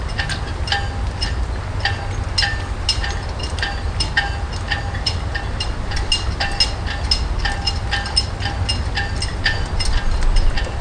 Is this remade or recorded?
recorded